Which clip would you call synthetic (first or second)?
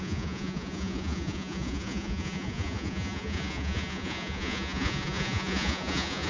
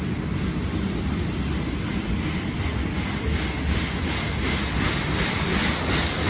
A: first